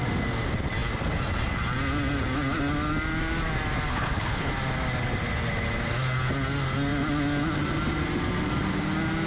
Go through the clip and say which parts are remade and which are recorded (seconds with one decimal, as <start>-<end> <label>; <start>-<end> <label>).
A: 0.0-3.9 recorded; 3.9-4.5 remade; 4.5-9.3 recorded